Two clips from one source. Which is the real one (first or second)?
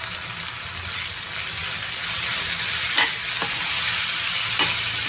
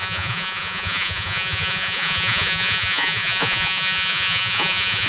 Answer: first